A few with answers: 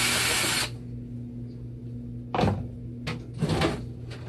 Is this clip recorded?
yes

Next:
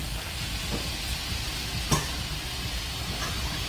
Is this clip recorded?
yes